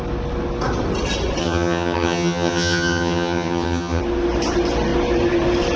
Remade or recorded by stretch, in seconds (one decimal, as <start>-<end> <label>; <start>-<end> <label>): 0.0-1.4 recorded; 1.4-4.0 remade; 4.0-5.8 recorded